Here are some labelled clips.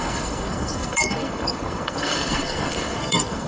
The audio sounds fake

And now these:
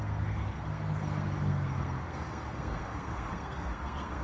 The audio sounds fake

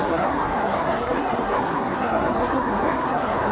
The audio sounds fake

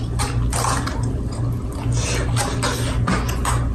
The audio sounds real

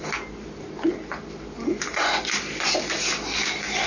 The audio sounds real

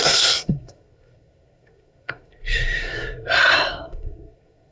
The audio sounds fake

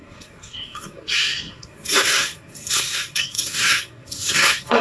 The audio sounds fake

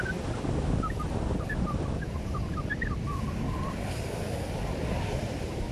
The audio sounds real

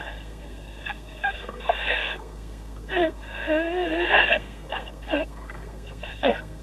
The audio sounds fake